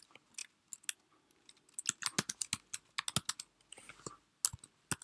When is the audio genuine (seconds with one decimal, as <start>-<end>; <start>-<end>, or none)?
0.0-5.0